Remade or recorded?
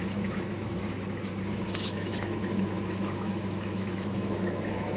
remade